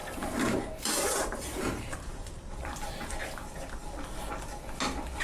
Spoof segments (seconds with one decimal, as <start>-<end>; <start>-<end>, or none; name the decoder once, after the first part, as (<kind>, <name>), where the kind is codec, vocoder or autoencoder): 0.0-3.1 (vocoder, BigVGAN v2)